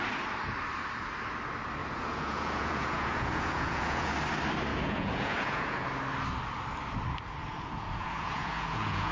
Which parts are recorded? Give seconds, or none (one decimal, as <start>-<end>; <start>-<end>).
0.0-1.8; 4.1-4.7; 5.9-7.4